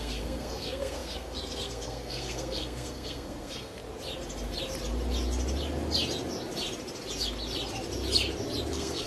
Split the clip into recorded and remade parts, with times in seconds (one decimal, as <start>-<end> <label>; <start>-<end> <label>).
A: 0.0-3.8 remade; 3.8-8.7 recorded; 8.7-9.1 remade